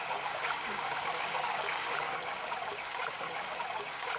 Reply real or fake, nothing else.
fake